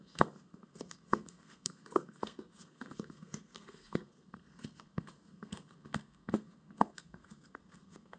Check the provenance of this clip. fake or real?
fake